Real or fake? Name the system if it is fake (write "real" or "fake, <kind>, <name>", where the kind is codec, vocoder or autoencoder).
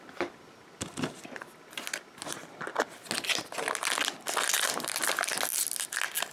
real